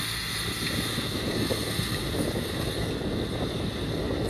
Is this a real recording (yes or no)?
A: yes